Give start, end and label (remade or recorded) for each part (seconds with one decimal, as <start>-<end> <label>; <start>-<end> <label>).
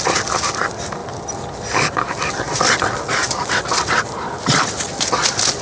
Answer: 0.0-5.6 recorded